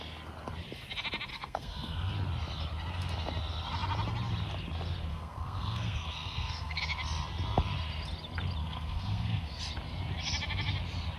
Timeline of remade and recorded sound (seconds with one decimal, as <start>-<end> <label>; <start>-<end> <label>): 0.0-1.3 recorded; 1.3-2.1 remade; 2.1-5.1 recorded; 5.1-6.8 remade; 6.8-8.6 recorded; 8.6-9.6 remade; 9.6-11.2 recorded

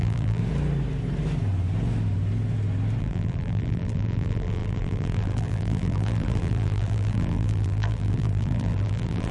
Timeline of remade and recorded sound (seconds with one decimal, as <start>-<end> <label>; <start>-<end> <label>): 0.0-0.4 remade; 0.4-3.0 recorded; 3.0-9.3 remade

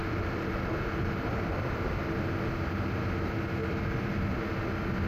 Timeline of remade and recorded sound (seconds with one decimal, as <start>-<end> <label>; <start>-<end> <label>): 0.0-2.0 remade; 2.0-3.6 recorded; 3.6-4.2 remade; 4.2-5.1 recorded

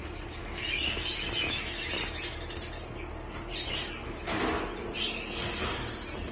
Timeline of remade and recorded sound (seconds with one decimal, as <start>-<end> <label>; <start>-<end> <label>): 0.0-0.4 recorded; 0.4-1.9 remade; 1.9-6.3 recorded

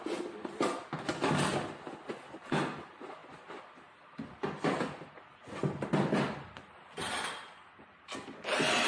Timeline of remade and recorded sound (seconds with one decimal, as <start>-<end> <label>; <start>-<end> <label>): 0.0-8.9 recorded